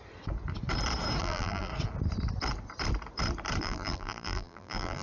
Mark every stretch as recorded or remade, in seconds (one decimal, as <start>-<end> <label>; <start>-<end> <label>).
0.0-1.2 recorded; 1.2-1.7 remade; 1.7-3.6 recorded; 3.6-5.0 remade